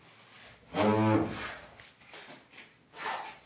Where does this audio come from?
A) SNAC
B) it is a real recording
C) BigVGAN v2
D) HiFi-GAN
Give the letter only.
B